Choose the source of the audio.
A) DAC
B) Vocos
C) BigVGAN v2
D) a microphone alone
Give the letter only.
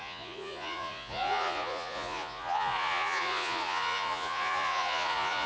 B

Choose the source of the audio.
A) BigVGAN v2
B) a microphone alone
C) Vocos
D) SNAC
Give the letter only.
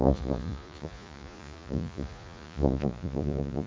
C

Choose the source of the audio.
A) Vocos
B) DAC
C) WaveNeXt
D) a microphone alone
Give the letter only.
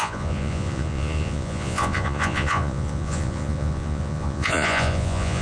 A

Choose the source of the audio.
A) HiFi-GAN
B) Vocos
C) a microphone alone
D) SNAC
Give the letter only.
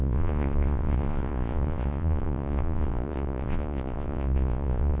B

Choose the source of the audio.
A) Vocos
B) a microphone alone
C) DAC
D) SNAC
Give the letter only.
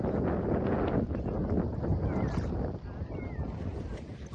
B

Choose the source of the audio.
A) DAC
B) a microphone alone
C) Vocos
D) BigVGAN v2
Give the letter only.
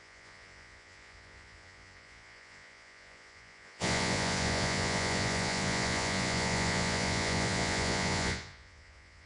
C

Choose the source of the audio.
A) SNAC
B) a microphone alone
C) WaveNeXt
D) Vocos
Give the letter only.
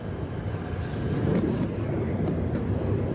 B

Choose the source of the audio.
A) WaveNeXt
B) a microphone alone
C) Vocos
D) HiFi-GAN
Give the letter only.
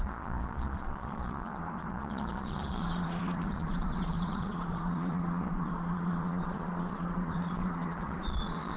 C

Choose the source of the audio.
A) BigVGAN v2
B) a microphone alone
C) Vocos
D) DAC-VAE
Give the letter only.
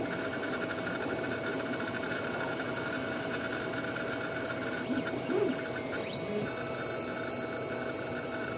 B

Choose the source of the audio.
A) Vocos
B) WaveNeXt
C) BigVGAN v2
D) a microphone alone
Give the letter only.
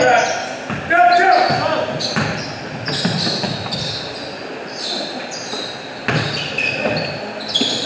D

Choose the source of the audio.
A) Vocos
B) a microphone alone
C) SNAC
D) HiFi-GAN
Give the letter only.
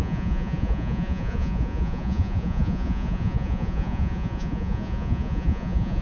A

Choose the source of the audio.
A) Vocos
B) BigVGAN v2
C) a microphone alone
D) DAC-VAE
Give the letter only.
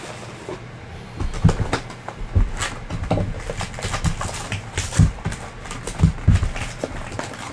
C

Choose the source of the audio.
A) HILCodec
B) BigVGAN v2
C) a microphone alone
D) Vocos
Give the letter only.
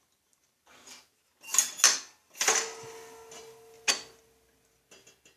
C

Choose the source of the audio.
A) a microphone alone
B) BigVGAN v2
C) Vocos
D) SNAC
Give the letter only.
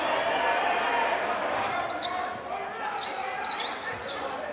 A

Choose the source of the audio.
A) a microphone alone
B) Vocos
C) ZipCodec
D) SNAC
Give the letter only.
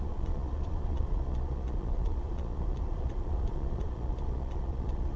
B